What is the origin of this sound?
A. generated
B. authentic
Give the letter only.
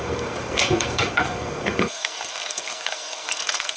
A